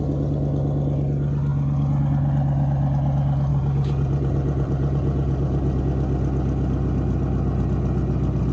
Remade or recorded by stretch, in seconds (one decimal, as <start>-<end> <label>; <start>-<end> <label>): 0.0-3.5 recorded; 3.5-5.8 remade; 5.8-8.5 recorded